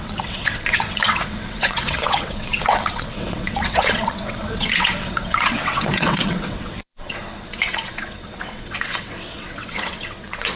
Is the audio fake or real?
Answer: fake